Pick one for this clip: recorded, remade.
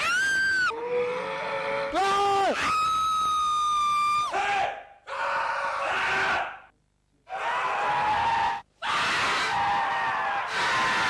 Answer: recorded